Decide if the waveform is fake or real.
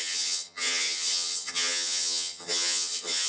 fake